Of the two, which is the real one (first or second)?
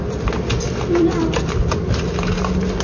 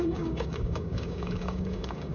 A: first